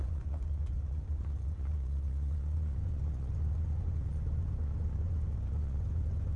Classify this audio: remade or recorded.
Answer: remade